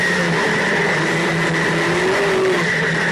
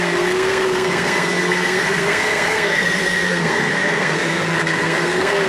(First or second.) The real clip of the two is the first